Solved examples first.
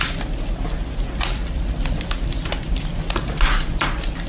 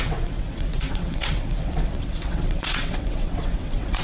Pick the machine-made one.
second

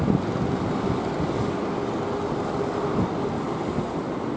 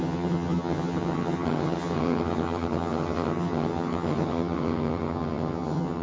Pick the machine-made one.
second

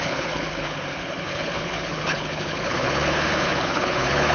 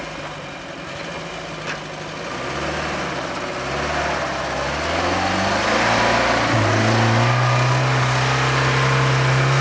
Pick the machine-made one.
first